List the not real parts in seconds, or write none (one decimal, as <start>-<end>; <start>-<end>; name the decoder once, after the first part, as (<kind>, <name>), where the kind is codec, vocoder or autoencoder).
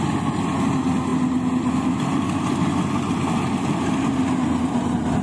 none